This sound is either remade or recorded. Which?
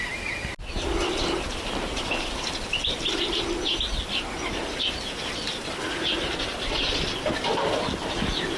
recorded